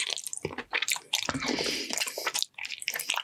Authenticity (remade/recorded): recorded